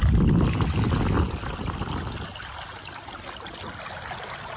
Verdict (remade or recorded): recorded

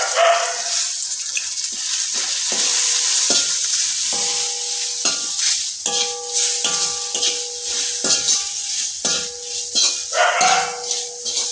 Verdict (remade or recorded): recorded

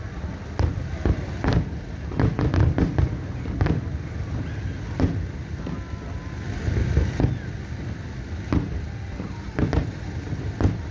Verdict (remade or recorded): recorded